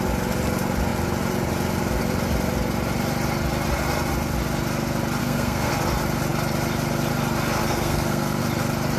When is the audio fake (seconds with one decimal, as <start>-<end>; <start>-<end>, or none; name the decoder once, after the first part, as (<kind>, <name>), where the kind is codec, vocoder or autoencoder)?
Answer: 5.2-5.7 (codec, SNAC); 7.6-8.4